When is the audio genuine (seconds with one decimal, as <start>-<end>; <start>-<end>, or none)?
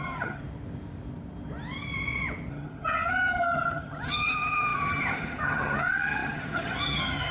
0.4-2.5